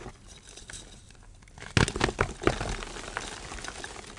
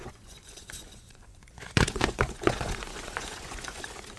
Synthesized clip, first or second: second